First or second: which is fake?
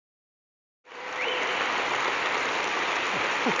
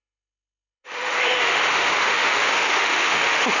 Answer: second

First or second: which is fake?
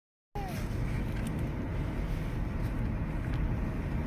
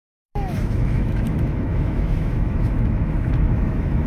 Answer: second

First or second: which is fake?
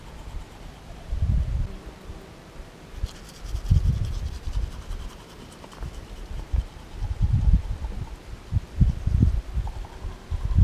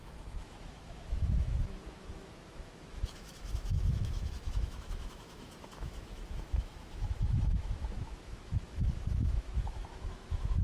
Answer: second